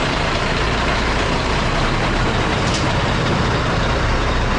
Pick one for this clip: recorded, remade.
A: remade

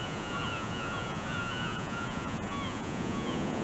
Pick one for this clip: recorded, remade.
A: remade